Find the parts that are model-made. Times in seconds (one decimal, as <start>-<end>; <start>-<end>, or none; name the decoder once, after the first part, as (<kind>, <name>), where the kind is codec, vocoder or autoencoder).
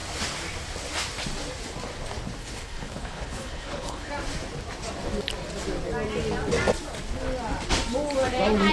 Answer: 2.4-4.1 (codec, HILCodec)